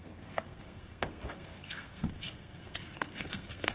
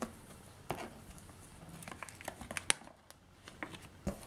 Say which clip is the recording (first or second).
second